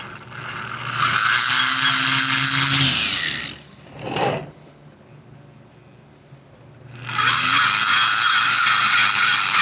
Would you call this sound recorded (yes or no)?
yes